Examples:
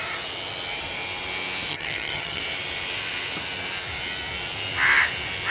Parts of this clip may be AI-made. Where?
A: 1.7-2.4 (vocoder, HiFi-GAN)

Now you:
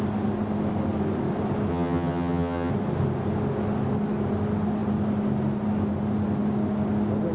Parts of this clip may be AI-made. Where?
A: 1.7-2.7 (vocoder, HiFi-GAN)